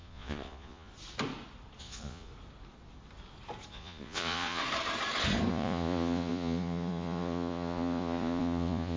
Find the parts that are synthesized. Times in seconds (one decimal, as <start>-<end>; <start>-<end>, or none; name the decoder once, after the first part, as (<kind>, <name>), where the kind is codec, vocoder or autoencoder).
0.0-0.9 (vocoder, Vocos); 1.8-2.3; 3.7-4.6; 5.5-9.0